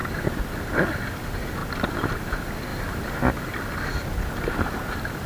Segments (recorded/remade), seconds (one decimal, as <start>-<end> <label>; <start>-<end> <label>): 0.0-5.3 recorded